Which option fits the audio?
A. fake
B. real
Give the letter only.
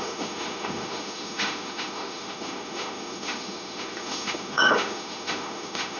A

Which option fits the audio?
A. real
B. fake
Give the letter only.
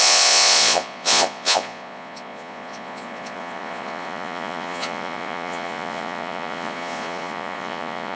B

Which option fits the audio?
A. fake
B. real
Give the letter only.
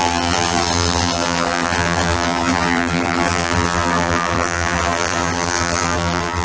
A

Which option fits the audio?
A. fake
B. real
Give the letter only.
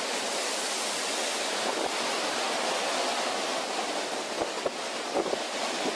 B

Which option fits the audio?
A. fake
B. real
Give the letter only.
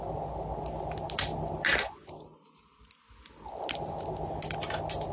B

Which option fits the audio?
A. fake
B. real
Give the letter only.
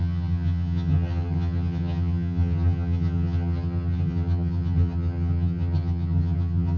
A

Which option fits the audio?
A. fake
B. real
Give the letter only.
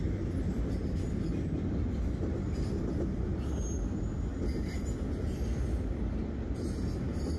B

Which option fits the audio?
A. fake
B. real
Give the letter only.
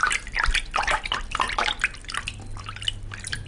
B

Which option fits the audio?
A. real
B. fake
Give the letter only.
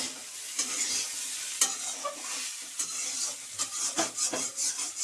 A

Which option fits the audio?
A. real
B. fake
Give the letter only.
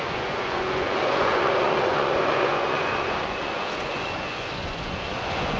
B